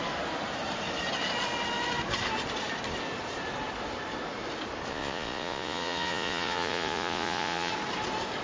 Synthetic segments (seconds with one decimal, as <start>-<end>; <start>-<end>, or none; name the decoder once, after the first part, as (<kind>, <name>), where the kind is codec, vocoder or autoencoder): 4.9-7.7 (vocoder, Vocos)